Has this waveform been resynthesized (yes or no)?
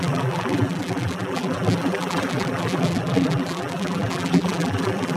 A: yes